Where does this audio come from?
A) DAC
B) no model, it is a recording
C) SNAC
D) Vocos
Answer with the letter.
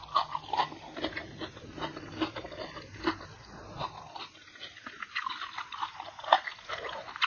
B